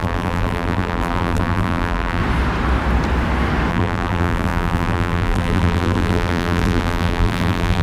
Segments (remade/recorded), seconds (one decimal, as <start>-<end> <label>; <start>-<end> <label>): 0.0-2.2 remade; 2.2-3.7 recorded; 3.7-7.8 remade